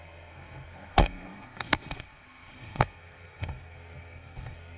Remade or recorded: remade